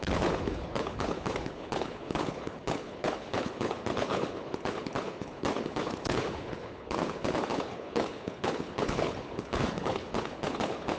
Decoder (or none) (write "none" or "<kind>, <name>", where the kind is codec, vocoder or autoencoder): codec, HILCodec